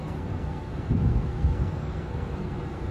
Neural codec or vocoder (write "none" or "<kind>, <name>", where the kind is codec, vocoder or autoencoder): codec, SNAC